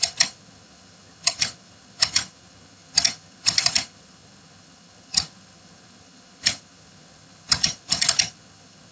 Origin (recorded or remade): remade